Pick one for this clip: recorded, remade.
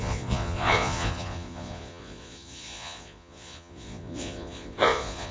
remade